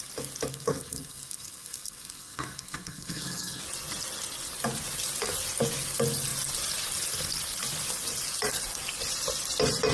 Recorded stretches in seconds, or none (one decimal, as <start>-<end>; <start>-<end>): 0.0-0.5; 3.6-9.9